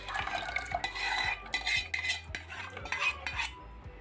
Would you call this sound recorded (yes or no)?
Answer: yes